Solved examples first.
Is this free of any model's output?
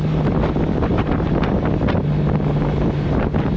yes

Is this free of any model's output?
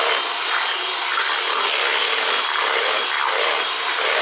yes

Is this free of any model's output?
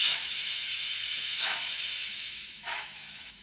no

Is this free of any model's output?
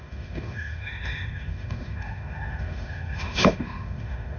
no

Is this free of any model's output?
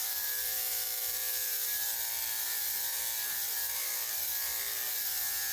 yes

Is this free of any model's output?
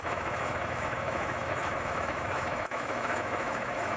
no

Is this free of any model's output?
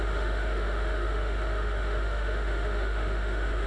no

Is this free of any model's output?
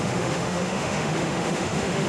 no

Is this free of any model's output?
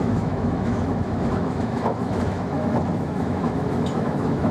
no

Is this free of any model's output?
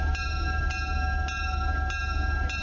yes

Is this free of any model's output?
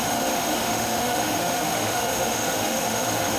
no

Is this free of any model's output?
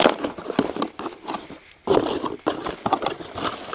yes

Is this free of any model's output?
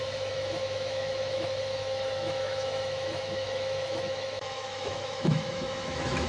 no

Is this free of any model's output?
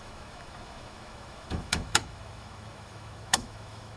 no